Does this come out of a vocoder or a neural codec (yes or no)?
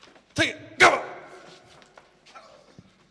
yes